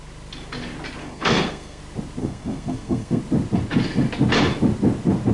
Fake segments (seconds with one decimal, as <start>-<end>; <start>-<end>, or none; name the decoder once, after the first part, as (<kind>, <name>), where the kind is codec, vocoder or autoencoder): 1.0-1.8 (codec, SNAC); 2.2-3.2